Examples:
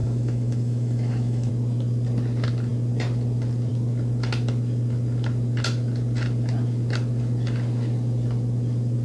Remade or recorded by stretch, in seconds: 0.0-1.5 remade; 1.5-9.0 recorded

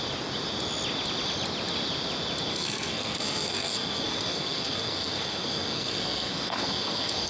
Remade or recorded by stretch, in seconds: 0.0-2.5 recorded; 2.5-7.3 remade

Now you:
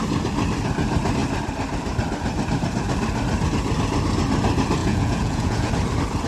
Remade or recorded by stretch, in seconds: 0.0-4.8 recorded; 4.8-5.7 remade; 5.7-6.3 recorded

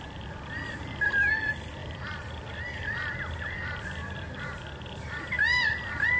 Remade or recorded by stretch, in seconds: 0.0-1.8 recorded; 1.8-5.2 remade; 5.2-6.2 recorded

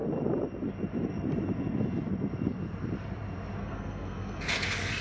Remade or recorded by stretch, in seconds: 0.0-3.6 recorded; 3.6-4.4 remade; 4.4-5.0 recorded